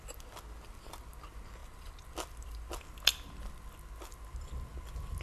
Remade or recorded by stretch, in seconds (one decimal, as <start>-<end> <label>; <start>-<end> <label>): 0.0-1.6 recorded; 1.6-2.7 remade; 2.7-5.2 recorded